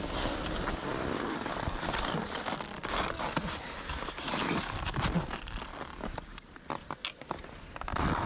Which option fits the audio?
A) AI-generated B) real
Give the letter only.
B